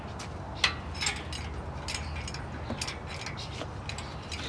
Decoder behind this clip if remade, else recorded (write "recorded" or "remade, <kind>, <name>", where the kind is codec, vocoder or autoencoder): recorded